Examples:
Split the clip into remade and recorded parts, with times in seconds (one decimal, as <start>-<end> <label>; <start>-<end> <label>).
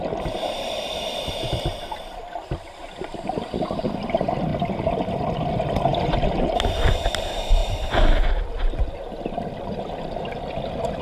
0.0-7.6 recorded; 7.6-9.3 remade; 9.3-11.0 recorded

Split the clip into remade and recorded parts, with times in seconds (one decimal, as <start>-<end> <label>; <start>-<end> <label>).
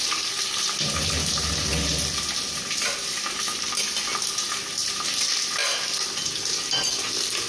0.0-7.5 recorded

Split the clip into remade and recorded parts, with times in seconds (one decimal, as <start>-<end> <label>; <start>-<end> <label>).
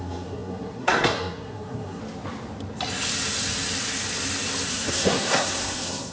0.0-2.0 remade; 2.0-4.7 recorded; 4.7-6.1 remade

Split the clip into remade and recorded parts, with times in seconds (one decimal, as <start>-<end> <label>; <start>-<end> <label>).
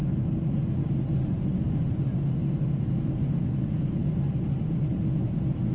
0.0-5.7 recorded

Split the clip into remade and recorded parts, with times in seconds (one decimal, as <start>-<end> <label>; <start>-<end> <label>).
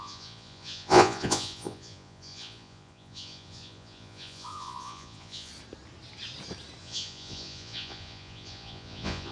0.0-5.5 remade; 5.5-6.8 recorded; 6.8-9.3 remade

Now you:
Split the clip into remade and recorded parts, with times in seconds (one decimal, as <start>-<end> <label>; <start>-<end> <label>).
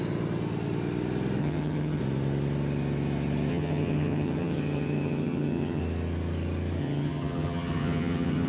0.0-1.4 recorded; 1.4-2.0 remade; 2.0-3.5 recorded; 3.5-5.8 remade; 5.8-6.8 recorded; 6.8-8.5 remade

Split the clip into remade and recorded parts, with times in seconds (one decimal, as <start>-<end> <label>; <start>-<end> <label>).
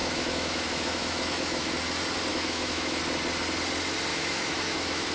0.0-1.7 remade; 1.7-2.3 recorded; 2.3-3.0 remade; 3.0-4.1 recorded; 4.1-5.1 remade